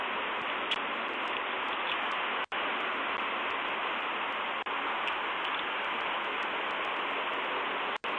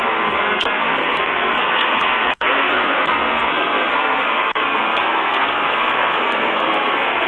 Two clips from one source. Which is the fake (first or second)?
second